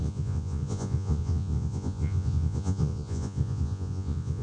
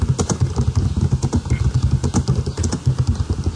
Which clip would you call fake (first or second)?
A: first